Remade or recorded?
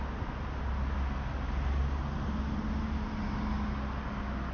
recorded